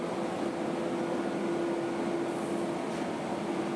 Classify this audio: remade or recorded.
recorded